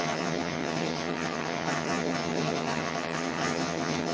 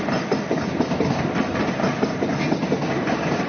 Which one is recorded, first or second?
second